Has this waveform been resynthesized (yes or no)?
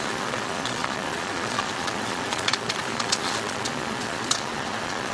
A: yes